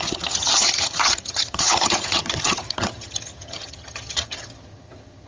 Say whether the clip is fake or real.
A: fake